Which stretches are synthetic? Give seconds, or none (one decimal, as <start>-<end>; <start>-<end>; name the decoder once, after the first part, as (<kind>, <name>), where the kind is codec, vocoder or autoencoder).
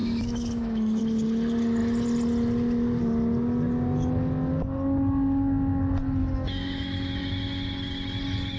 0.0-1.0 (autoencoder, DAC-VAE); 6.2-7.2